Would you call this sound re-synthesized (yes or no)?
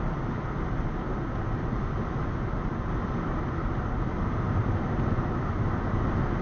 no